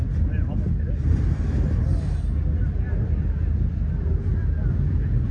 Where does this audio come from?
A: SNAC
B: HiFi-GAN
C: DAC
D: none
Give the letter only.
D